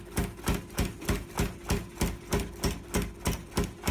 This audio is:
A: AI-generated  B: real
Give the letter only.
B